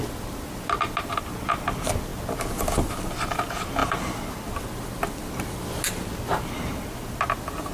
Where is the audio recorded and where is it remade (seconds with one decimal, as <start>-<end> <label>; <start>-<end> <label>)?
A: 0.0-7.7 recorded